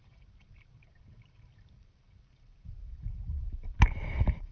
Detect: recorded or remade remade